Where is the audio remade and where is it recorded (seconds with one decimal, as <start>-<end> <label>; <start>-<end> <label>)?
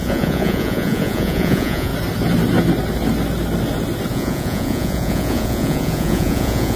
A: 0.0-1.9 remade; 1.9-4.1 recorded; 4.1-6.8 remade